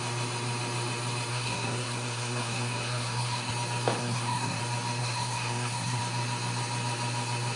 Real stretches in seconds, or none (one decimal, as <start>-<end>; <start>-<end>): 0.0-1.3; 3.5-4.0; 4.6-5.0; 6.0-7.6